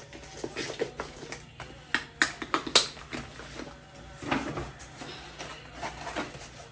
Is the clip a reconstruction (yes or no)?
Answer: no